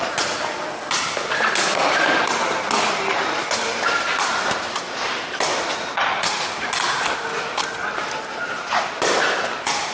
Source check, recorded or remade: recorded